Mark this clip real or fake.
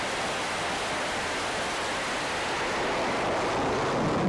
real